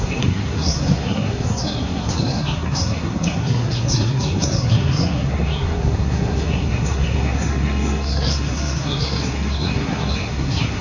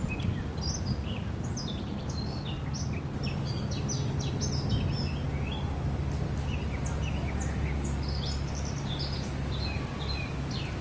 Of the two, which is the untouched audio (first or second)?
second